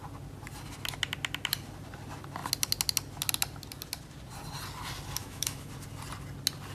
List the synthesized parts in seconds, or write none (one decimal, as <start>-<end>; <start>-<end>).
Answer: 5.2-5.7